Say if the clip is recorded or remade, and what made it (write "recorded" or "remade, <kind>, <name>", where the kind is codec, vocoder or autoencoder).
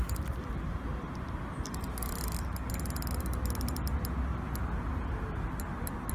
recorded